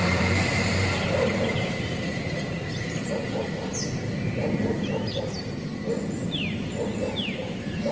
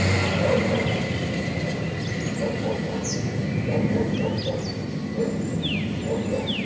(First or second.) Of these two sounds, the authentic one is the second